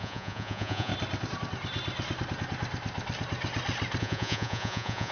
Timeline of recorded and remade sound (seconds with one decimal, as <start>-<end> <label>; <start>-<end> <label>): 0.0-0.9 remade; 0.9-4.0 recorded; 4.0-5.1 remade